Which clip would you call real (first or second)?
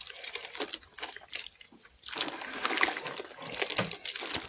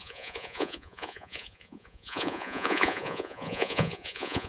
first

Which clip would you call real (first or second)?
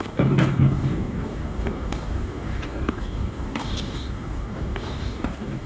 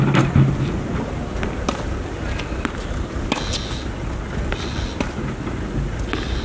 second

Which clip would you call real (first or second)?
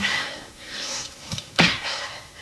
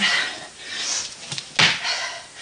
second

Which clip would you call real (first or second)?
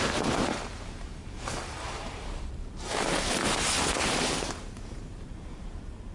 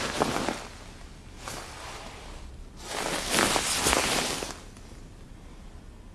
second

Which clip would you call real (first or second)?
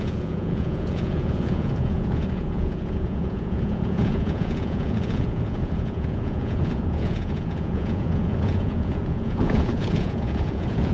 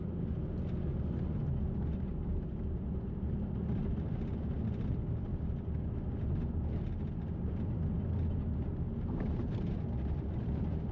second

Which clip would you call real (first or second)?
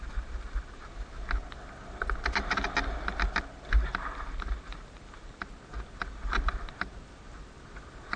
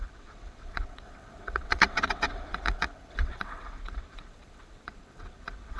first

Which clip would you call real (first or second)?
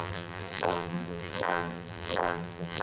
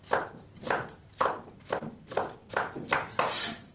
second